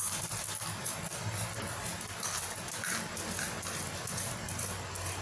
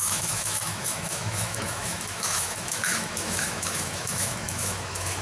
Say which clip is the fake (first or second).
second